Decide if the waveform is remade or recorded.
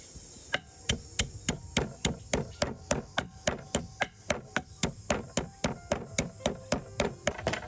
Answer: recorded